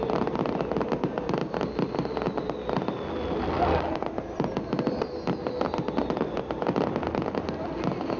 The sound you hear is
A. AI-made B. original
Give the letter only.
B